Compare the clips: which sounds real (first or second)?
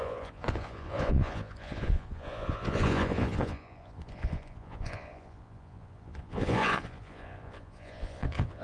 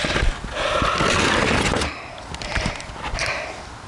second